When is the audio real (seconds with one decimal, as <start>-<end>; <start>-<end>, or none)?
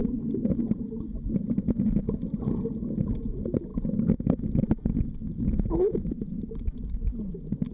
0.0-7.7